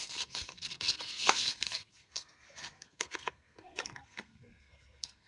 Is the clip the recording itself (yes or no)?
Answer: no